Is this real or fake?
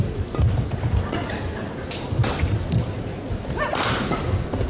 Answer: real